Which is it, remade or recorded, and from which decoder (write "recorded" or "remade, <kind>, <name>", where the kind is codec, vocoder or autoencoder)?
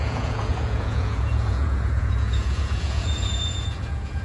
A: remade, vocoder, Vocos